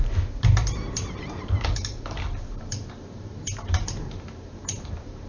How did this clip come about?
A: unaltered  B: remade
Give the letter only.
B